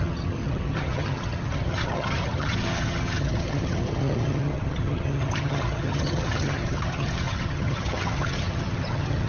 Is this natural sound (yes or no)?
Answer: no